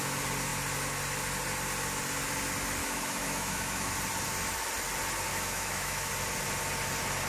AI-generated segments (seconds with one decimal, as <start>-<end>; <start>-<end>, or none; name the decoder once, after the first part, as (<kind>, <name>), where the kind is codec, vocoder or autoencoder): 2.8-3.9 (autoencoder, DAC-VAE); 5.3-6.1